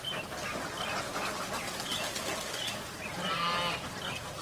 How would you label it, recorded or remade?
recorded